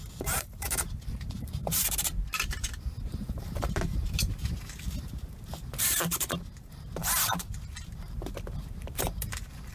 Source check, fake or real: fake